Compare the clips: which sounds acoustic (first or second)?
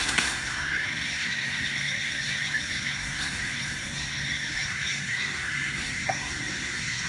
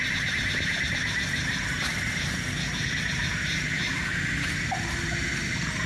second